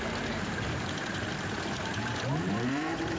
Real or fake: fake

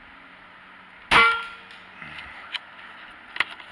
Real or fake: real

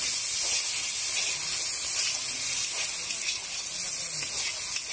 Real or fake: real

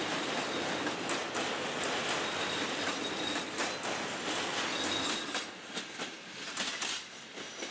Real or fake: real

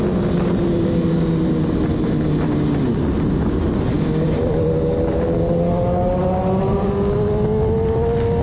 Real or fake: real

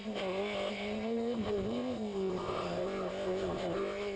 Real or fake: fake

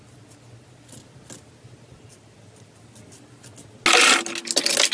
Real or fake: real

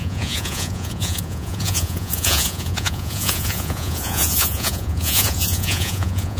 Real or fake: fake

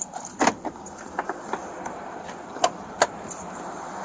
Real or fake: fake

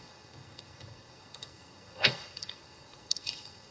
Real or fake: fake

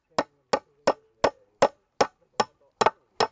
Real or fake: real